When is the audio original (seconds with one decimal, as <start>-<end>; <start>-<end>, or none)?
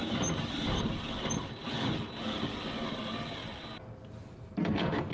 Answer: 0.8-5.1